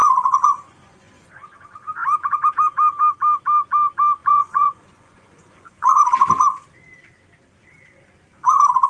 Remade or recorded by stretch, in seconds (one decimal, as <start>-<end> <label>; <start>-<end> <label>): 0.0-1.3 remade; 1.3-4.2 recorded; 4.2-6.0 remade; 6.0-8.9 recorded